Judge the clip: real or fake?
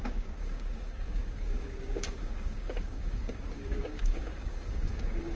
fake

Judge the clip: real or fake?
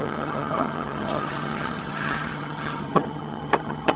fake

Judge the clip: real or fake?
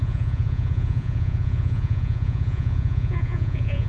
fake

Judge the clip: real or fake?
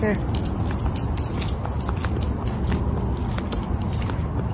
real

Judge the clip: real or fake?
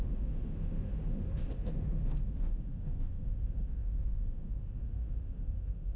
fake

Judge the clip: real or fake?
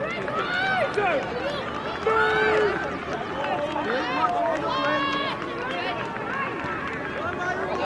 real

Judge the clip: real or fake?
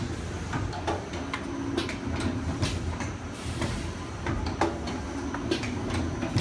real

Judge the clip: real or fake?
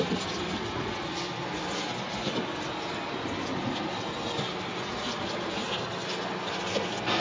real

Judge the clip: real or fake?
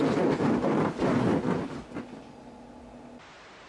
real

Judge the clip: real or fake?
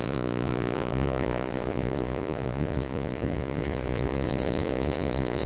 fake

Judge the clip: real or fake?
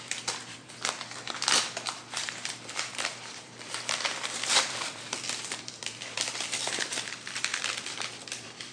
fake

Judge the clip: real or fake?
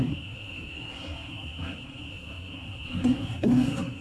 fake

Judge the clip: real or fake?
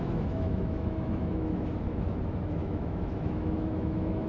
fake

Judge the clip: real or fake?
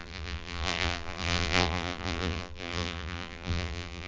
fake